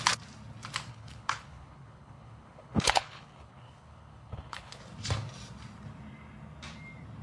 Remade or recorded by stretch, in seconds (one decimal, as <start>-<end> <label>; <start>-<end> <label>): 0.0-0.9 recorded; 0.9-4.8 remade; 4.8-7.2 recorded